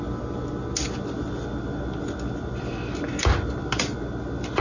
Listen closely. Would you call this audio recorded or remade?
recorded